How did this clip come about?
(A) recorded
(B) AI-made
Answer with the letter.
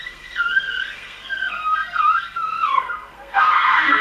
B